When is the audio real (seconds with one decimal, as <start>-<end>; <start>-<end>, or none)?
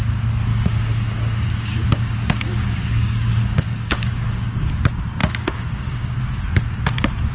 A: 0.0-0.5; 4.7-5.2; 6.2-7.3